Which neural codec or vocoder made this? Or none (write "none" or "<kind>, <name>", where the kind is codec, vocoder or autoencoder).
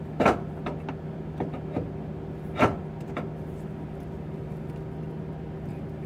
none